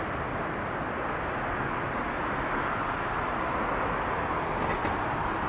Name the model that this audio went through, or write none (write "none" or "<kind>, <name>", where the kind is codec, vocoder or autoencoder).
none